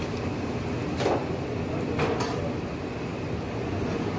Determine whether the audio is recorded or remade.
recorded